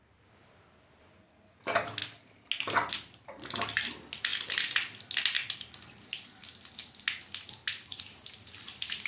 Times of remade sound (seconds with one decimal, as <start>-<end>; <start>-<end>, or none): none